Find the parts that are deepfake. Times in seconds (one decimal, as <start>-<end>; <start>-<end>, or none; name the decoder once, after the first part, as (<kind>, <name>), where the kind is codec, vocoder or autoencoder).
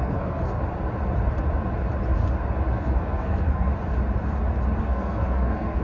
0.0-0.6 (codec, SNAC); 2.8-3.7; 4.8-5.8